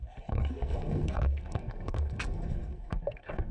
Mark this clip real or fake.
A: fake